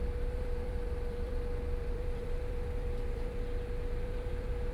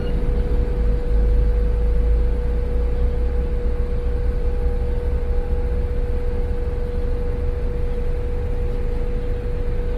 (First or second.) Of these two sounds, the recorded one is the second